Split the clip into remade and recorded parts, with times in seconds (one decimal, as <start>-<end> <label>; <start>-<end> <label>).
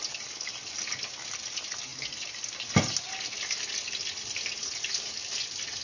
0.0-5.8 recorded